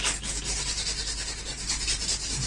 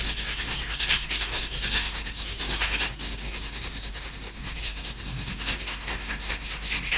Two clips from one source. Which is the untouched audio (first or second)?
first